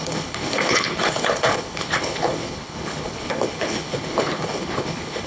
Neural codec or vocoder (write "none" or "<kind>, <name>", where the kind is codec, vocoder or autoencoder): codec, HILCodec